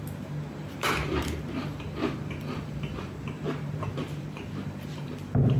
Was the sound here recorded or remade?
remade